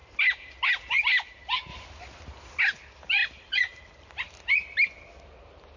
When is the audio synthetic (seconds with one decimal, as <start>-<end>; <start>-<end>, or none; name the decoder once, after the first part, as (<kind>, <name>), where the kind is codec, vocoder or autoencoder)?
0.0-0.9 (vocoder, BigVGAN v2); 3.2-3.8

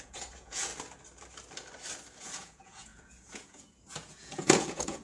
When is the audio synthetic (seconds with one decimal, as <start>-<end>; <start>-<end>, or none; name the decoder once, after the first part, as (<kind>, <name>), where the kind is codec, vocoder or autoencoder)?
0.0-0.7 (vocoder, Vocos); 2.2-5.0